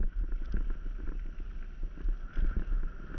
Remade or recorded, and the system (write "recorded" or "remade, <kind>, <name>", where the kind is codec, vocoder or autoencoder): recorded